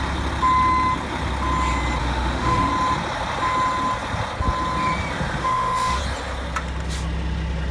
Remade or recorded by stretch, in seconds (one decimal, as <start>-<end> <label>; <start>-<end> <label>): 0.0-2.0 recorded; 2.0-2.7 remade; 2.7-5.4 recorded; 5.4-6.0 remade; 6.0-7.7 recorded